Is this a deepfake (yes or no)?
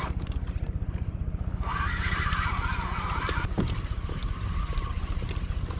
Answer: no